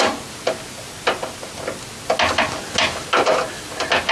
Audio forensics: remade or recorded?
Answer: recorded